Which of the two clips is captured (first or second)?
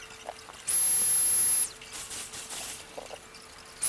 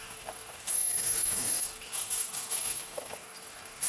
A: first